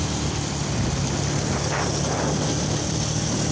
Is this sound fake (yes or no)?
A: no